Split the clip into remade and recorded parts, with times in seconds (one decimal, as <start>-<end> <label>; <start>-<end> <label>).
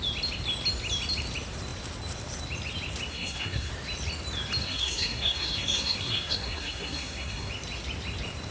0.0-3.1 recorded; 3.1-3.7 remade; 3.7-4.6 recorded; 4.6-7.5 remade; 7.5-8.5 recorded